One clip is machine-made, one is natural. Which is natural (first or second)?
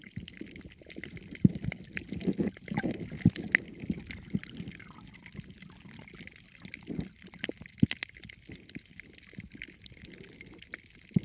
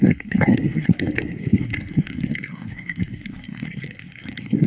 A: first